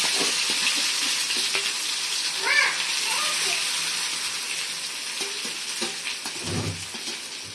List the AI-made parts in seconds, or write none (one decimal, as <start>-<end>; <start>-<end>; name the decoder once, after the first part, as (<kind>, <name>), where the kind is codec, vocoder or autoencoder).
none